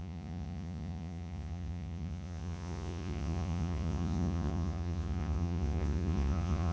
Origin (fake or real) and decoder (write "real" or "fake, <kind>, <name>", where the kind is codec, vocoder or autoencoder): fake, vocoder, Vocos